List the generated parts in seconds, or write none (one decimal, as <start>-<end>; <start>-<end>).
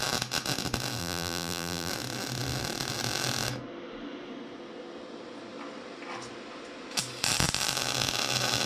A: 1.0-1.9